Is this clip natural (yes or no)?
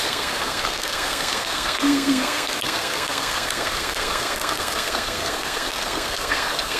no